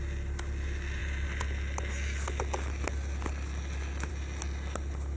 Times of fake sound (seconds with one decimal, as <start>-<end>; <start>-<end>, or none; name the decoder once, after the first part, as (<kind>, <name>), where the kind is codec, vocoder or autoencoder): none